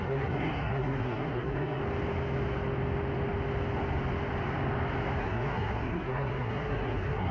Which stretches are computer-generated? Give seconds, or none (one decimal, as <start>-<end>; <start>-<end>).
0.0-1.8; 5.2-7.3